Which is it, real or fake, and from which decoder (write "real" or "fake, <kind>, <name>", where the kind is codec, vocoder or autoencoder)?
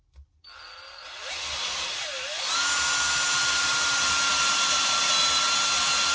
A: real